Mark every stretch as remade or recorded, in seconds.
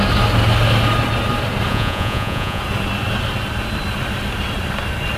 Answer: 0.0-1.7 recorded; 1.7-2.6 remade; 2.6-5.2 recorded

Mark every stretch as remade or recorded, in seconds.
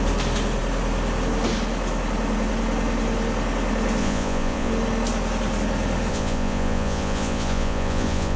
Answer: 0.0-4.0 recorded; 4.0-4.7 remade; 4.7-6.1 recorded; 6.1-8.4 remade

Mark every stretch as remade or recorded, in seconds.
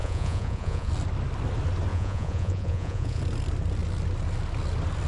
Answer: 0.0-0.9 remade; 0.9-1.9 recorded; 1.9-3.2 remade; 3.2-5.1 recorded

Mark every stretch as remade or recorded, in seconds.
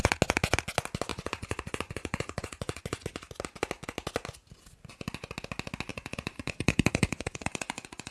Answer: 0.0-1.1 recorded; 1.1-2.8 remade; 2.8-5.9 recorded; 5.9-8.1 remade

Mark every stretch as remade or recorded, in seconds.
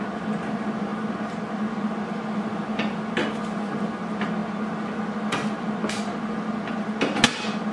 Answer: 0.0-7.7 recorded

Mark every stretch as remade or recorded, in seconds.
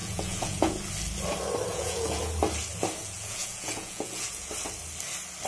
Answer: 0.0-0.7 remade; 0.7-1.7 recorded; 1.7-2.2 remade; 2.2-3.0 recorded; 3.0-4.5 remade; 4.5-5.5 recorded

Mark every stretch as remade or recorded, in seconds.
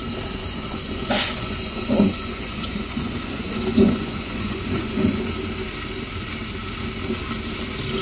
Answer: 0.0-0.4 recorded; 0.4-5.2 remade; 5.2-8.0 recorded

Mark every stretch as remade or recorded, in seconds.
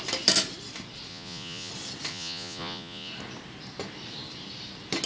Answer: 0.0-1.1 recorded; 1.1-1.7 remade; 1.7-2.1 recorded; 2.1-3.1 remade; 3.1-5.1 recorded